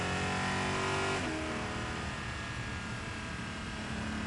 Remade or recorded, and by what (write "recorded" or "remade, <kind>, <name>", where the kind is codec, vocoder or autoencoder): recorded